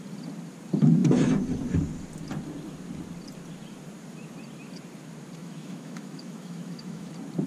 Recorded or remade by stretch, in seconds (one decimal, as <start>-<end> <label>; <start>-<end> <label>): 0.0-5.4 recorded; 5.4-7.1 remade; 7.1-7.5 recorded